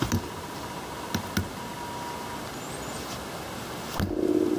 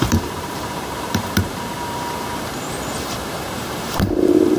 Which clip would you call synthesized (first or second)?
second